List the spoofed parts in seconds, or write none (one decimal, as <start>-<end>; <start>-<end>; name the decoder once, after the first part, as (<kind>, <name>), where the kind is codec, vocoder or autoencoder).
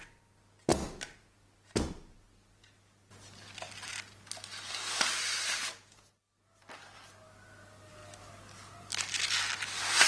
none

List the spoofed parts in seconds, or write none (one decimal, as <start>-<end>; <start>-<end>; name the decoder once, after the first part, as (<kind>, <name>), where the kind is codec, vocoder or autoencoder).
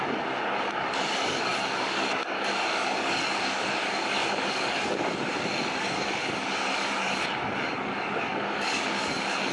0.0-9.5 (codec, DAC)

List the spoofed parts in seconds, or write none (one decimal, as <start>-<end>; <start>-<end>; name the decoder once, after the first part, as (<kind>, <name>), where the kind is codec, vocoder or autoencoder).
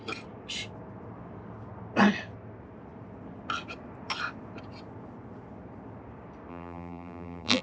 6.5-7.6 (vocoder, BigVGAN v2)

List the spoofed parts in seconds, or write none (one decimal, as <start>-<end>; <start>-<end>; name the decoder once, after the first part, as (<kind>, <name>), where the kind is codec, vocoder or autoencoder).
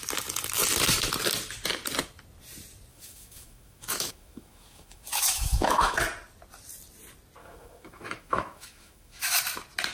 2.9-6.0 (autoencoder, DAC-VAE); 7.4-9.4